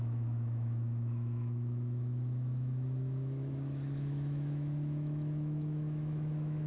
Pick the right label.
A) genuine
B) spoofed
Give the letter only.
B